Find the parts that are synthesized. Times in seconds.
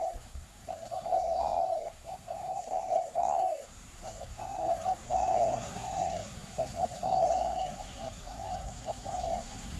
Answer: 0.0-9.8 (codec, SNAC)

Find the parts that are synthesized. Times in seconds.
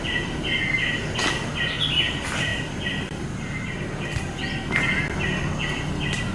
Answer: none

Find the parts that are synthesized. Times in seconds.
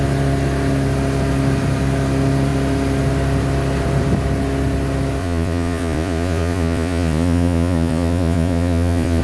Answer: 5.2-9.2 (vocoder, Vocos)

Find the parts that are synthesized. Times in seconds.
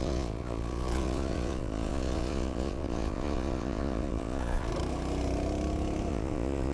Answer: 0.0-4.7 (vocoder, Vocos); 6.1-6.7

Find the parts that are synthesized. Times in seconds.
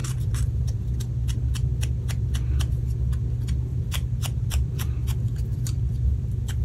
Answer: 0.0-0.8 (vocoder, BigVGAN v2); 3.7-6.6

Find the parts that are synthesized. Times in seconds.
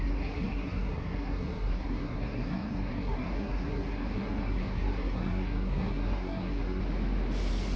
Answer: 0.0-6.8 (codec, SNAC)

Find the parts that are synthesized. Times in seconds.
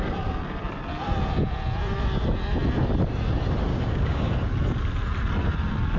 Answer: 3.7-4.3 (codec, DAC)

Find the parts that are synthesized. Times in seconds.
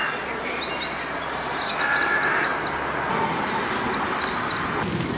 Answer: none